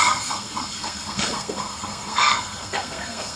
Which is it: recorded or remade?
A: remade